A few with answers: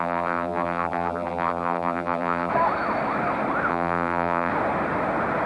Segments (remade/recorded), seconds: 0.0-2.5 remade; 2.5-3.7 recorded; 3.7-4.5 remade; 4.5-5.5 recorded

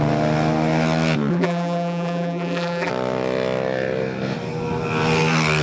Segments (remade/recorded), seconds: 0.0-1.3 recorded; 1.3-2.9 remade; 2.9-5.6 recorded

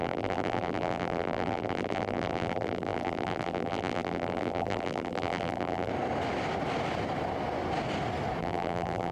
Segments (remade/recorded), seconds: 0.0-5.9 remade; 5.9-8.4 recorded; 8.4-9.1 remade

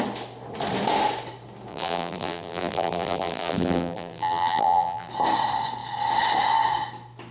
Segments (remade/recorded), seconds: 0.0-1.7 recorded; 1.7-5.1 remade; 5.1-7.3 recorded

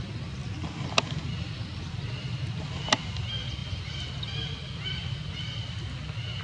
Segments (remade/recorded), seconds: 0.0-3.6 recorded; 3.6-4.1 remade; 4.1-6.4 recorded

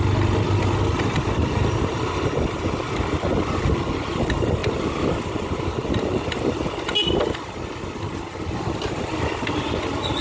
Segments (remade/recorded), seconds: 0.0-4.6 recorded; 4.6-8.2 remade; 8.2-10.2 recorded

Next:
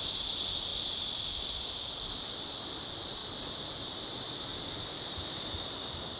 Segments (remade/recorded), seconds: 0.0-3.2 recorded; 3.2-3.9 remade; 3.9-4.5 recorded; 4.5-5.2 remade; 5.2-6.2 recorded